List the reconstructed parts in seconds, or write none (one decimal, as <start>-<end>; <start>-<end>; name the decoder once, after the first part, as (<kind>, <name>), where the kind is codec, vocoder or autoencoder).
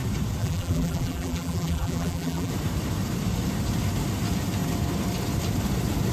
0.4-2.5 (vocoder, BigVGAN v2)